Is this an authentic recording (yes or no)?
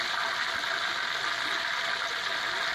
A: yes